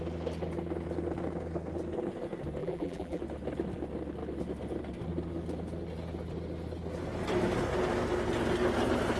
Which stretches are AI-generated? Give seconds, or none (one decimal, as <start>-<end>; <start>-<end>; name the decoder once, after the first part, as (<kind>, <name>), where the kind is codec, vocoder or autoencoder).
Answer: 2.6-3.2 (vocoder, BigVGAN v2)